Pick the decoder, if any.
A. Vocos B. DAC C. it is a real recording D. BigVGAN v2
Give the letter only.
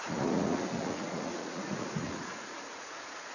A